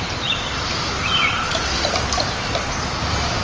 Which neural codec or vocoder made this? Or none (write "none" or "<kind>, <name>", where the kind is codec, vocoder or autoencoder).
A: vocoder, BigVGAN v2